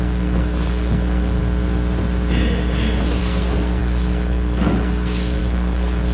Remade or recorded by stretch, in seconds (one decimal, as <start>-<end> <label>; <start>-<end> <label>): 0.0-1.4 remade; 1.4-3.2 recorded; 3.2-6.1 remade